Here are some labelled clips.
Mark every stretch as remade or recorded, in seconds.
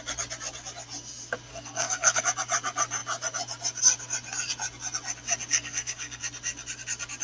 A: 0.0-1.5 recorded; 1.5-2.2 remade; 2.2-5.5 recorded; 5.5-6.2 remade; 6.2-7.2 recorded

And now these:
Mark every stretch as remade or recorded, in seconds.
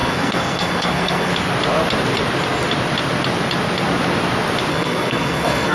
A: 0.0-1.3 remade; 1.3-4.7 recorded; 4.7-5.7 remade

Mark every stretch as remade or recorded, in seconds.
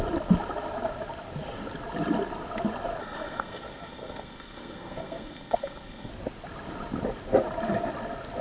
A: 0.0-3.0 recorded; 3.0-6.1 remade; 6.1-8.4 recorded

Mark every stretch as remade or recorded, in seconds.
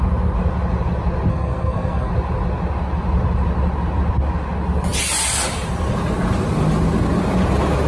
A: 0.0-1.3 recorded; 1.3-2.1 remade; 2.1-7.9 recorded